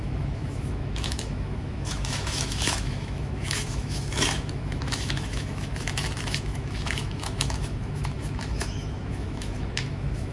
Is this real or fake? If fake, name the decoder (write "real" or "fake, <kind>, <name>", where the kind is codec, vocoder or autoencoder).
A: fake, autoencoder, DAC-VAE